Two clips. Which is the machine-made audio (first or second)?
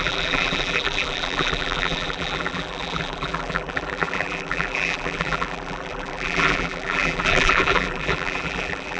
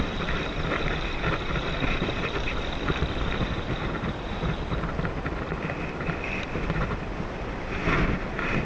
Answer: first